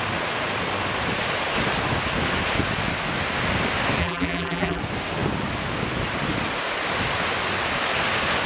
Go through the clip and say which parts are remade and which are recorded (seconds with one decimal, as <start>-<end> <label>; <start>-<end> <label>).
0.0-4.0 recorded; 4.0-4.8 remade; 4.8-8.5 recorded